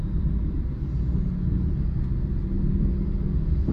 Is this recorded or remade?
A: recorded